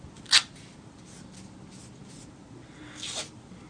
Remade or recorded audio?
recorded